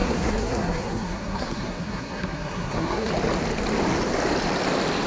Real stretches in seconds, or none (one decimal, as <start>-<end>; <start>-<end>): 3.1-5.1